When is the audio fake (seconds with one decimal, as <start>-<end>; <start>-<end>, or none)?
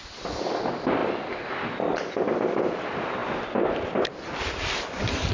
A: none